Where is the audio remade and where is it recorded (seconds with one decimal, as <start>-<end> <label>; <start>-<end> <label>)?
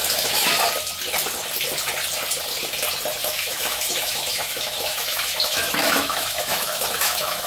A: 0.0-0.6 remade; 0.6-3.2 recorded; 3.2-7.5 remade